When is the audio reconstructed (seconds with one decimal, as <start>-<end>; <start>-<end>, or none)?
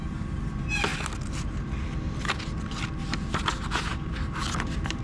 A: none